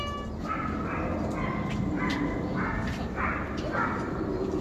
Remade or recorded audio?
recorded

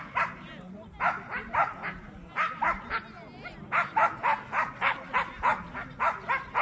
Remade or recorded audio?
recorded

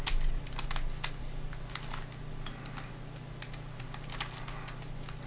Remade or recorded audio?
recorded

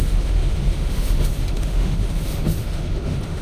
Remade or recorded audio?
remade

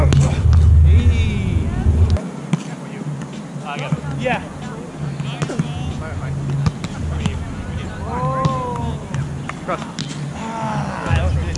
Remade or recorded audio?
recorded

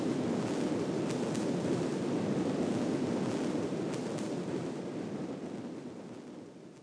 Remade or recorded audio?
recorded